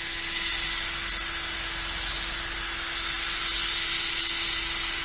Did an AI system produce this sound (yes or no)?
no